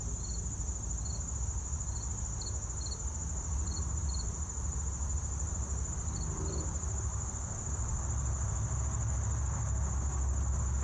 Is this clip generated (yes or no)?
no